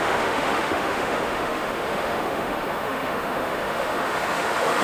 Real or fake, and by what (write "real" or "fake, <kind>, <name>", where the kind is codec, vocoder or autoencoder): fake, autoencoder, DAC-VAE